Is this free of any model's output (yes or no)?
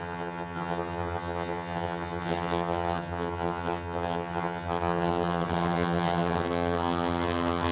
no